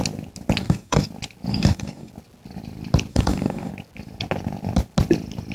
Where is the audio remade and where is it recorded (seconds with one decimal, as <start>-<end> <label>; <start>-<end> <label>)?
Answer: 0.0-0.6 recorded; 0.6-1.1 remade; 1.1-1.5 recorded; 1.5-2.1 remade; 2.1-3.1 recorded; 3.1-3.7 remade; 3.7-5.5 recorded